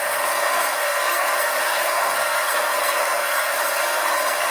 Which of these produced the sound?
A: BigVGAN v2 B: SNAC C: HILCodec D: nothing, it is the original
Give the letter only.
B